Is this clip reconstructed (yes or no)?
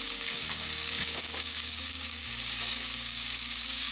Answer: yes